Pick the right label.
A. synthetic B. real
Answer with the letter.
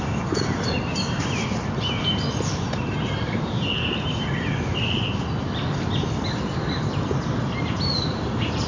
B